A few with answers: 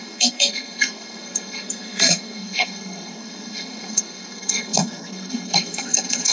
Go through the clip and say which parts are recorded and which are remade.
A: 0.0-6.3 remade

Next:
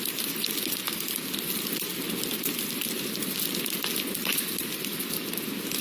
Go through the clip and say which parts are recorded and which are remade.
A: 0.0-5.8 recorded

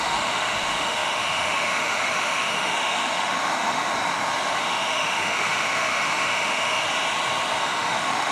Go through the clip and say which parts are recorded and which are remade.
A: 0.0-3.9 remade; 3.9-4.5 recorded; 4.5-6.9 remade; 6.9-7.6 recorded; 7.6-8.3 remade

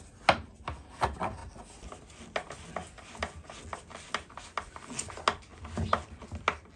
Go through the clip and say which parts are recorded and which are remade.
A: 0.0-6.8 recorded

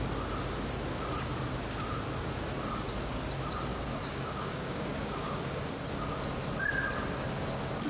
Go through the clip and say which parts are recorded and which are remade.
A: 0.0-3.7 recorded; 3.7-5.4 remade; 5.4-7.9 recorded